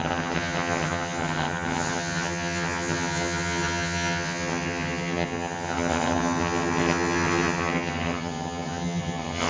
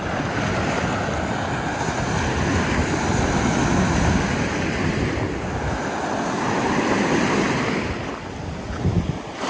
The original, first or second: second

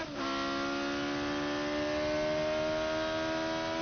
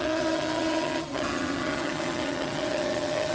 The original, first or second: first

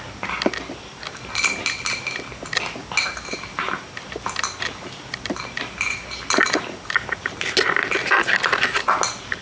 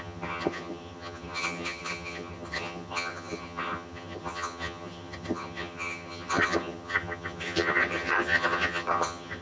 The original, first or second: first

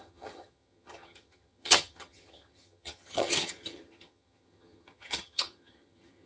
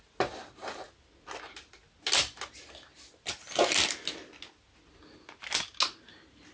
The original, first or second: second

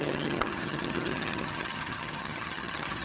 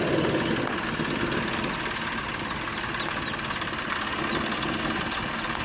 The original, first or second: second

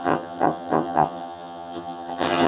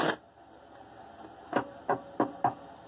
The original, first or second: second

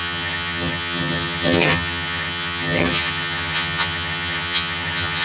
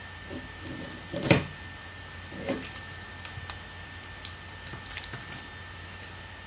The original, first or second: second